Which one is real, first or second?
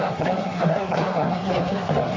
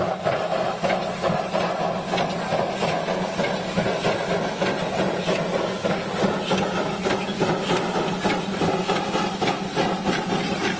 second